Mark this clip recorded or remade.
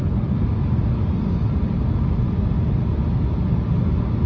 recorded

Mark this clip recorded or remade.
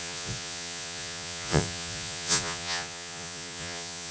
remade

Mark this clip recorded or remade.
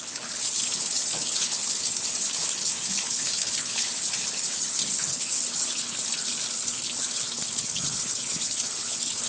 remade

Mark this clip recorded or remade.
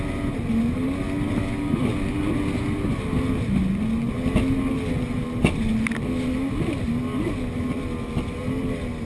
recorded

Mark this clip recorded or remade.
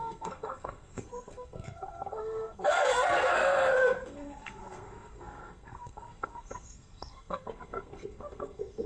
remade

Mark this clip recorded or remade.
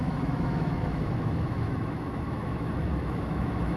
remade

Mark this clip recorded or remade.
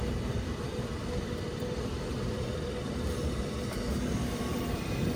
remade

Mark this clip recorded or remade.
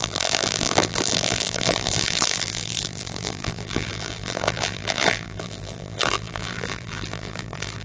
remade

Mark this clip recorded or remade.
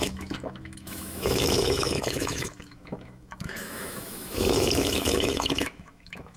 remade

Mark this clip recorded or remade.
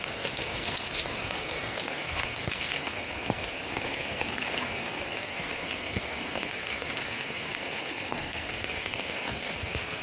remade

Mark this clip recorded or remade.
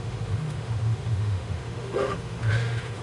remade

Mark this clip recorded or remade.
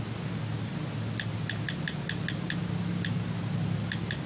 recorded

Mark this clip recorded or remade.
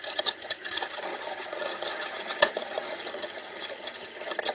remade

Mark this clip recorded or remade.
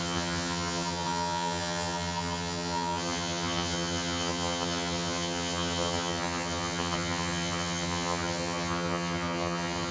remade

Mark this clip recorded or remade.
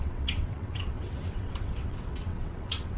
remade